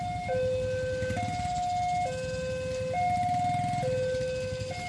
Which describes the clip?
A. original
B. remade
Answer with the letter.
A